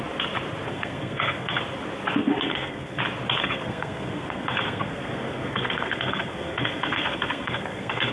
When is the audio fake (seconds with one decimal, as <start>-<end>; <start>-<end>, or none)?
0.7-1.6; 2.2-3.0; 3.4-8.1

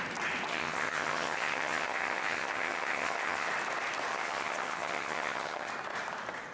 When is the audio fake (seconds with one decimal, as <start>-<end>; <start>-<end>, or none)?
0.5-3.5; 4.1-5.7

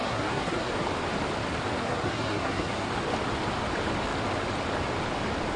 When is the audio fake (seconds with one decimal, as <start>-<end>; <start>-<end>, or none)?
0.0-0.7; 1.8-2.9

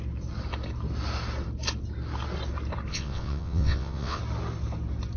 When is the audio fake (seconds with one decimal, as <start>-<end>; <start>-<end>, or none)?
2.9-4.2

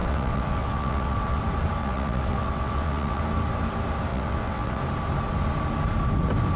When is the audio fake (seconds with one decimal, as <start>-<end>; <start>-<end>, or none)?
0.0-1.4; 1.8-3.2; 4.1-4.8

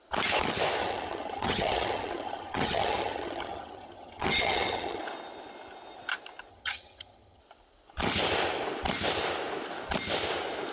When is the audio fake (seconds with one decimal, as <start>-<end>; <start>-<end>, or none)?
0.8-5.0; 6.5-7.4

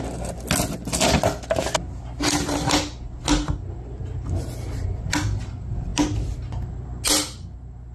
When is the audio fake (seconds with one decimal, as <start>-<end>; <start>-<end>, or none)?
none

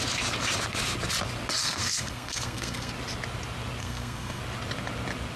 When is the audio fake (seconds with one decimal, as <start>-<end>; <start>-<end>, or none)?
1.6-2.9; 3.8-4.4